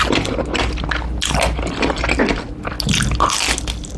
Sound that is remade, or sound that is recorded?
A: recorded